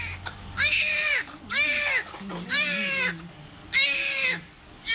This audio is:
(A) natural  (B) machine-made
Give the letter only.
B